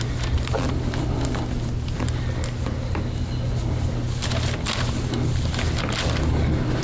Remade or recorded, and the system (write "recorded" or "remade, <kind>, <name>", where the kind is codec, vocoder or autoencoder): recorded